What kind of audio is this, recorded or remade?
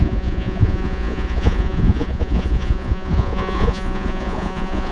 remade